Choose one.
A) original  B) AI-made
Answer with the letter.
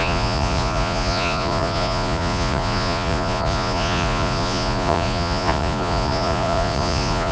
B